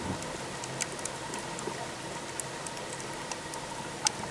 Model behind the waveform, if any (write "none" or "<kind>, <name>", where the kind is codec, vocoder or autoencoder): none